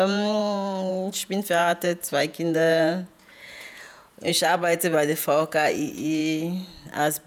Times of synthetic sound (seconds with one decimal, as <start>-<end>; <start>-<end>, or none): 0.0-6.2